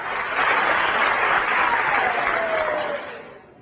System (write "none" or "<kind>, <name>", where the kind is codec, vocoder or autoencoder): none